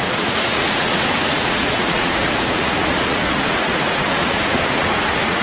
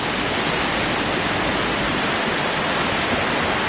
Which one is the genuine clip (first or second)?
second